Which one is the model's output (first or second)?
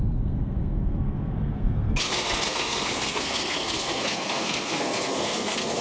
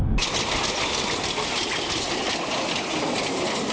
first